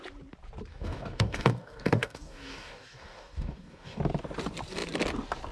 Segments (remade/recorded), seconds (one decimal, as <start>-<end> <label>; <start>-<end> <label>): 0.0-0.7 recorded; 0.7-4.0 remade; 4.0-5.5 recorded